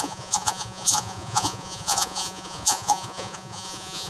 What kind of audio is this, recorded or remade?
remade